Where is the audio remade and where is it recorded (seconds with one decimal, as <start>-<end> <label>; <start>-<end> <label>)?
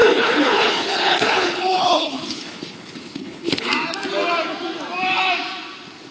0.0-3.7 remade; 3.7-6.1 recorded